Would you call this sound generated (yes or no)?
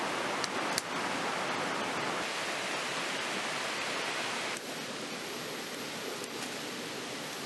no